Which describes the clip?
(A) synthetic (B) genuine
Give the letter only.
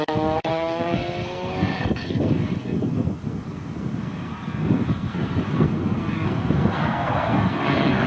A